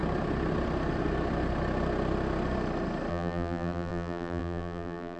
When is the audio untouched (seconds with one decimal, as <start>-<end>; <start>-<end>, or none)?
0.0-3.1